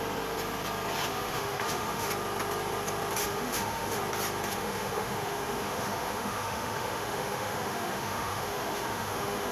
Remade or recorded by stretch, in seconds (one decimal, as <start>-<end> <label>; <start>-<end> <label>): 0.0-1.1 recorded; 1.1-2.1 remade; 2.1-3.2 recorded; 3.2-4.0 remade; 4.0-4.5 recorded; 4.5-9.5 remade